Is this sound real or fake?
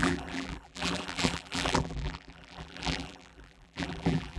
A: fake